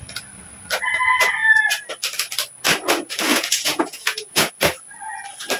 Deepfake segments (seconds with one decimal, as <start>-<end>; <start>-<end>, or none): 3.3-4.5